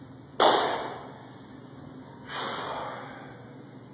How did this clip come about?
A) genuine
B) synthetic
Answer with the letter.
A